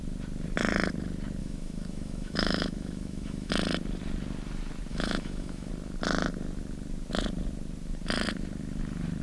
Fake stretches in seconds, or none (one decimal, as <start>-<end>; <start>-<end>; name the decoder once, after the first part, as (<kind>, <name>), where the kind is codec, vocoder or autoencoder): 1.4-3.5 (autoencoder, DAC-VAE); 4.9-5.7